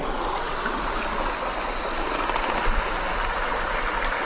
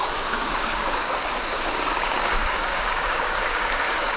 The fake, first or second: second